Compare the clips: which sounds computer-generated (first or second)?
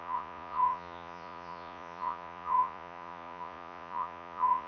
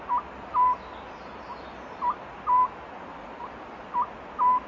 first